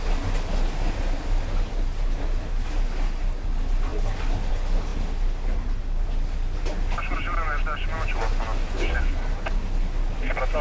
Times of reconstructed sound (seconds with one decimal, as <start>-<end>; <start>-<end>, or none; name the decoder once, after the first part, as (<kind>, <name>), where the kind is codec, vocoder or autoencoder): none